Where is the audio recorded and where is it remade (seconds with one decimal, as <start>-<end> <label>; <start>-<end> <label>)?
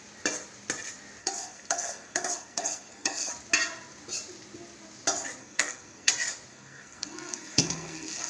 0.0-1.2 recorded; 1.2-3.3 remade; 3.3-5.4 recorded; 5.4-6.1 remade; 6.1-6.5 recorded; 6.5-8.3 remade